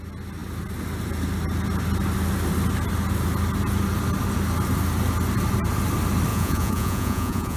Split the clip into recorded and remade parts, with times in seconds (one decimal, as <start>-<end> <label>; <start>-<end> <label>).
0.0-6.3 recorded; 6.3-7.6 remade